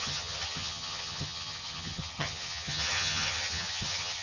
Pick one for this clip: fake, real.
fake